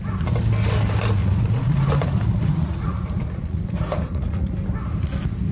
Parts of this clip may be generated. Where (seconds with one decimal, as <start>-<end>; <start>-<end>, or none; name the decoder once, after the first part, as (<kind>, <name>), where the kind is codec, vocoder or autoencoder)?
1.2-4.5 (vocoder, Vocos)

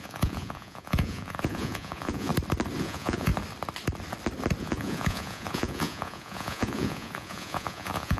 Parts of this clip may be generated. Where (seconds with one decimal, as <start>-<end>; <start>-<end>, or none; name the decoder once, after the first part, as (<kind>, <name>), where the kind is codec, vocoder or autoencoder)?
0.0-2.3 (vocoder, Vocos); 2.8-3.3; 4.6-8.2

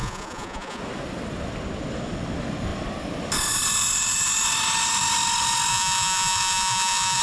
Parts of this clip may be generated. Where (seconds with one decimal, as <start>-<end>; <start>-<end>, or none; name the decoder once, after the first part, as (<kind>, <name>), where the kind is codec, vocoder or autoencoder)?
0.0-0.8 (vocoder, Vocos); 5.7-7.2

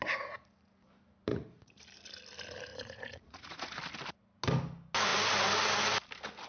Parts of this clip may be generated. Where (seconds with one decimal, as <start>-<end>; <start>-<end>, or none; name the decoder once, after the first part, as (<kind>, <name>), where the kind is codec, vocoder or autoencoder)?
1.3-1.8 (vocoder, Vocos); 2.7-3.8

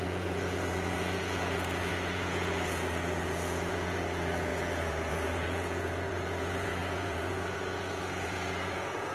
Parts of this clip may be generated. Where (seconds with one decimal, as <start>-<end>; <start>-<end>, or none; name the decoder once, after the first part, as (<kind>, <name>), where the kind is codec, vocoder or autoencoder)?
0.0-9.1 (vocoder, Vocos)

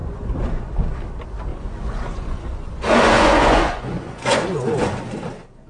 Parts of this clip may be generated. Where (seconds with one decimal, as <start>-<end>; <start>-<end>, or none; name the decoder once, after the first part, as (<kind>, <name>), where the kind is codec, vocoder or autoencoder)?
0.0-0.7 (vocoder, Vocos); 1.5-4.9

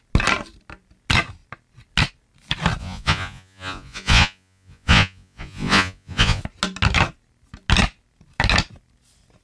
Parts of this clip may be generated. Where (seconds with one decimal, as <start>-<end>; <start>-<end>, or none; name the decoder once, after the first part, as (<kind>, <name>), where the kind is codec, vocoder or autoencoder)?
2.8-6.4 (vocoder, Vocos)

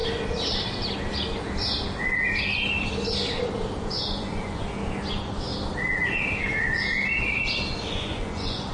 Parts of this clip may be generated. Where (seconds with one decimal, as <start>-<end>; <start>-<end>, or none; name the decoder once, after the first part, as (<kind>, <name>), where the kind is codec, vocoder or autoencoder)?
3.8-4.6 (vocoder, Vocos); 5.1-5.5; 7.9-8.7